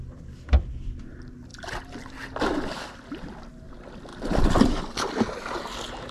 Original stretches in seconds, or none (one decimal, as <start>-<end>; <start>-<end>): 0.0-6.1